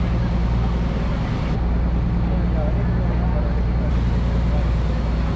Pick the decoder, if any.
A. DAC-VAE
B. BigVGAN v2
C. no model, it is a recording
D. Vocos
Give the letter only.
C